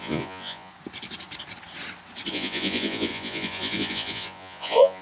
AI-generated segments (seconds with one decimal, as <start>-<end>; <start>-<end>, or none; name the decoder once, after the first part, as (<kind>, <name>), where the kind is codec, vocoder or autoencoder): 0.0-0.7 (vocoder, Vocos); 2.3-5.0

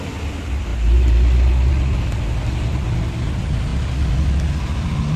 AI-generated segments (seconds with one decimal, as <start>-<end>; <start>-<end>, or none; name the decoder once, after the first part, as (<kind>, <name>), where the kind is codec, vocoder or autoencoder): none

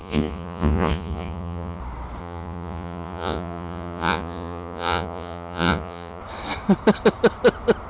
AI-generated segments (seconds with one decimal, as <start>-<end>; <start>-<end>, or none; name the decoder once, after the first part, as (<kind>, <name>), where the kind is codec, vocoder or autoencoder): 0.0-1.8 (vocoder, Vocos); 2.2-6.2

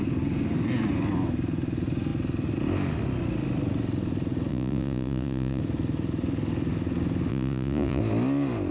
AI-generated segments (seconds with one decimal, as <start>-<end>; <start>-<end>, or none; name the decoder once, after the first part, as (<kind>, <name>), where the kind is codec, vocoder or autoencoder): 4.5-5.6 (vocoder, Vocos); 7.3-8.0

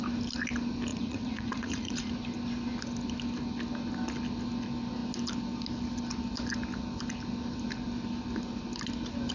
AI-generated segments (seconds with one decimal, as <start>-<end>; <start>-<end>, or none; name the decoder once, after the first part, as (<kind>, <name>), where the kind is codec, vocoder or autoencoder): 0.9-2.1 (vocoder, Vocos)